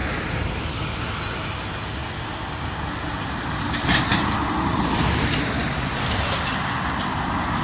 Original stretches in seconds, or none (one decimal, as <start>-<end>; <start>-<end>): 0.0-7.6